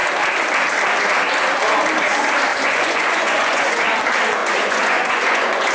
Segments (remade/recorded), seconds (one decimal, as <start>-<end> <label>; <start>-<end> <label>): 0.0-2.5 recorded; 2.5-3.8 remade; 3.8-4.4 recorded; 4.4-5.7 remade